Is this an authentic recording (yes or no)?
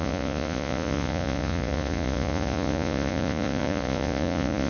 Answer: no